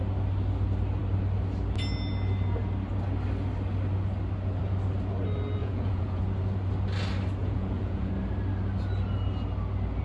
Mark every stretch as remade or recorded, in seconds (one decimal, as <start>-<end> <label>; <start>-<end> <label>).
0.0-5.6 recorded; 5.6-6.2 remade; 6.2-7.4 recorded; 7.4-8.1 remade; 8.1-10.0 recorded